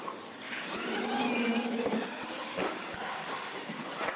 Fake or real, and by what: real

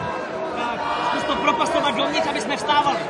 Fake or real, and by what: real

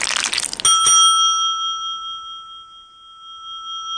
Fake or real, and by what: real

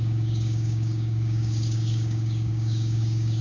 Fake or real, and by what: fake, codec, DAC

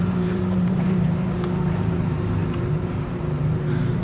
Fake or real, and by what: fake, vocoder, BigVGAN v2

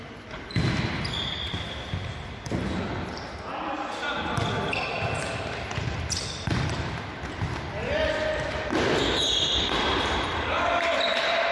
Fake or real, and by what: fake, vocoder, BigVGAN v2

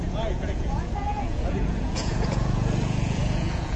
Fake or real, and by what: fake, vocoder, Vocos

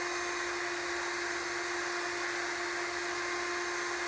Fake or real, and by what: real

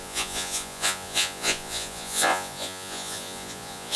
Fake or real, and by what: fake, vocoder, Vocos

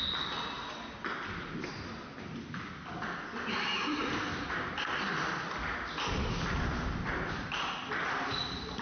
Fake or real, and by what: real